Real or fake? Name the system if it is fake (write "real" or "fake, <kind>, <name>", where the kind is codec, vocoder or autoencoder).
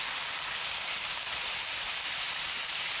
fake, vocoder, BigVGAN v2